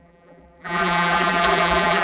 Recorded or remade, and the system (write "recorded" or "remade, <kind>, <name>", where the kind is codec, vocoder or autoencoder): remade, vocoder, BigVGAN v2